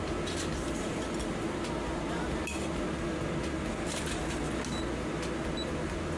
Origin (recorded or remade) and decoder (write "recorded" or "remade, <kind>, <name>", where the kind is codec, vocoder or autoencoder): recorded